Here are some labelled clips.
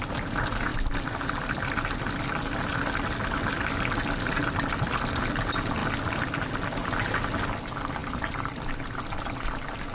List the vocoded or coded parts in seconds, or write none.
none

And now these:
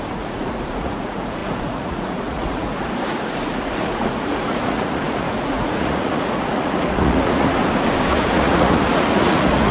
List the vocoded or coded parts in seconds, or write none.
0.0-7.6; 8.1-9.7

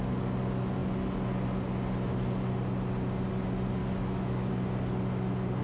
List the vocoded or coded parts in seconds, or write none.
3.8-4.5